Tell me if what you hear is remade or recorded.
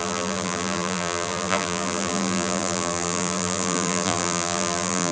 remade